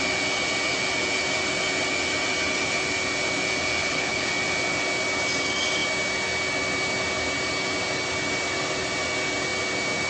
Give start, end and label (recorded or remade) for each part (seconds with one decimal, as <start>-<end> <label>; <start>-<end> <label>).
0.0-3.8 recorded; 3.8-4.3 remade; 4.3-10.1 recorded